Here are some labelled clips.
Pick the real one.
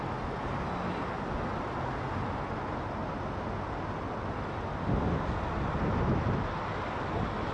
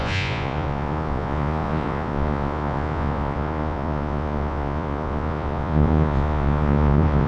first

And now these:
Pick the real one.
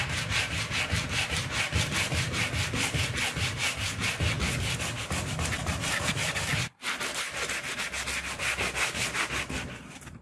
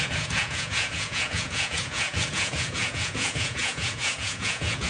first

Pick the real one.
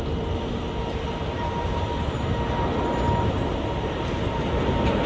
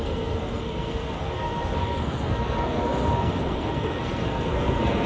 first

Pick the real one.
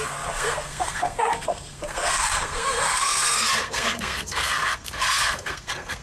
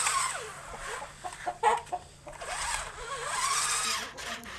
second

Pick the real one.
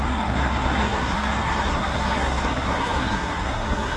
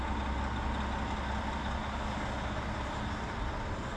second